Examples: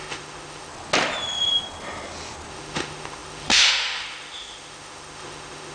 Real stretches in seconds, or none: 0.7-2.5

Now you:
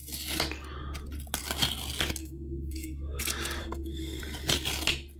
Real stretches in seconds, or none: 0.0-2.2; 3.2-3.6; 4.2-5.2

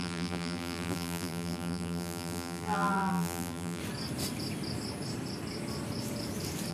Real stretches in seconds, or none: 3.8-6.7

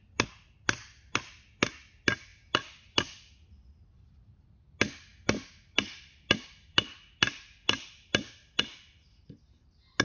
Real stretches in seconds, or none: 0.0-10.0

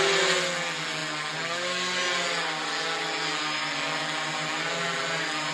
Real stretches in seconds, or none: 0.0-5.5